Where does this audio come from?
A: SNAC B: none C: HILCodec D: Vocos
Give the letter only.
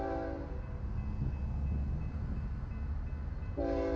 B